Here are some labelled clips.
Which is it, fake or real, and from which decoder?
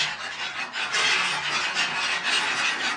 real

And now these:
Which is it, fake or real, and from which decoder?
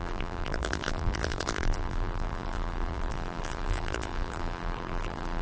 fake, vocoder, BigVGAN v2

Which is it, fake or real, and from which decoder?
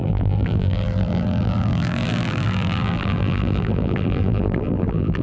fake, vocoder, BigVGAN v2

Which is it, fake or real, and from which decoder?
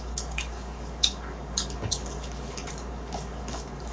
fake, codec, DAC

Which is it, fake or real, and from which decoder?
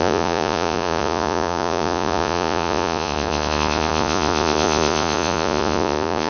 fake, vocoder, Vocos